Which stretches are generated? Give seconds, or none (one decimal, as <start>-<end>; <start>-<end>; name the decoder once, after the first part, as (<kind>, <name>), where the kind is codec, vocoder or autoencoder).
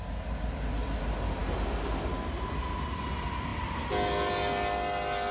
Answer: none